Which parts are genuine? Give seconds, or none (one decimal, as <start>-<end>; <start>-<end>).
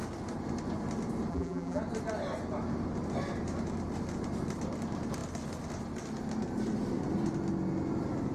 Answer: 0.0-1.3; 1.8-8.3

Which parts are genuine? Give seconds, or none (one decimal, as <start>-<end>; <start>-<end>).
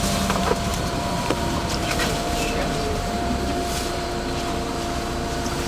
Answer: 0.0-0.7; 4.1-5.7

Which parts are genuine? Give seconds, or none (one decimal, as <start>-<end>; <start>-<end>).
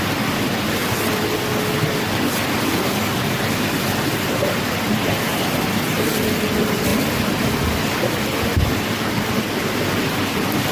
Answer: 0.8-2.0; 6.9-8.8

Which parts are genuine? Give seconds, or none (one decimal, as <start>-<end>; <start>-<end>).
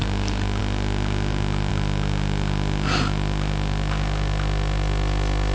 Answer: 0.0-5.5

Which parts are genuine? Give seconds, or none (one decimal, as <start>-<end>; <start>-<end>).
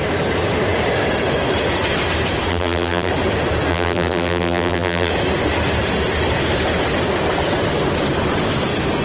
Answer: 0.0-2.5; 3.1-3.7; 5.1-9.0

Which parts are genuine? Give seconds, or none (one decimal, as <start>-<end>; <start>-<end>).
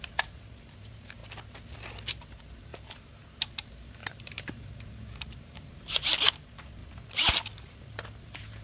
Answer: 1.2-2.2; 6.8-7.7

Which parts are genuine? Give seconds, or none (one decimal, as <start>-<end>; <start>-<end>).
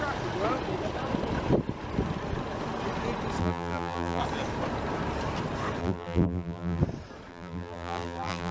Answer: 0.0-3.4; 4.2-5.8; 6.8-7.3